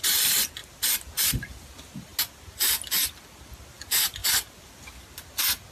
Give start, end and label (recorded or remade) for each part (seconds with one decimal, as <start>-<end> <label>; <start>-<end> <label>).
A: 0.0-0.6 recorded; 0.6-1.7 remade; 1.7-5.7 recorded